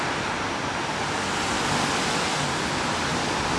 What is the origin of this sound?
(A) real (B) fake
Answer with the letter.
A